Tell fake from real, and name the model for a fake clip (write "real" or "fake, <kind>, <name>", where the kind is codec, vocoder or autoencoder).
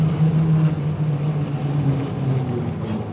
real